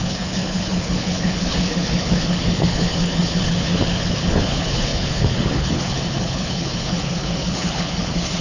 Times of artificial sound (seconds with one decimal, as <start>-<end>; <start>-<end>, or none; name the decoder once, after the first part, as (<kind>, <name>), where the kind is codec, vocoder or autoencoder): 0.0-8.4 (codec, HILCodec)